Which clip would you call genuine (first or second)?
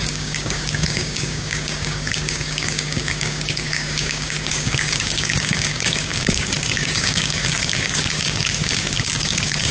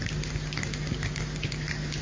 second